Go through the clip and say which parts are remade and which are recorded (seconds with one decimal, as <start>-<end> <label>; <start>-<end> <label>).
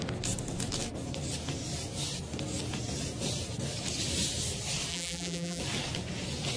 0.0-4.9 recorded; 4.9-5.6 remade; 5.6-6.6 recorded